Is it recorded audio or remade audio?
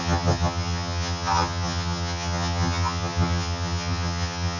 remade